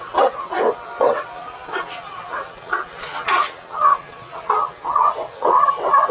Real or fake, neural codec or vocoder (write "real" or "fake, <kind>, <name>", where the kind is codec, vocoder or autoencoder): fake, vocoder, WaveNeXt